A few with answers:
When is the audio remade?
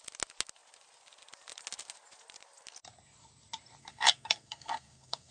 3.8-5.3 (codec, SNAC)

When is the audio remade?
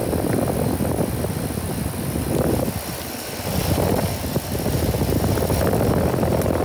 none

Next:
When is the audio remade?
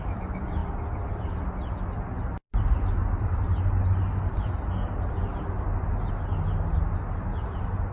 none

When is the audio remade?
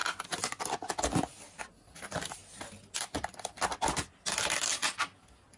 none